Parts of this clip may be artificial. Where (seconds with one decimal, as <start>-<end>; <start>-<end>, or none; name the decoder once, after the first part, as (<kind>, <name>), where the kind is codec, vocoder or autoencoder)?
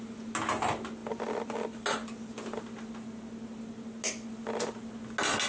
none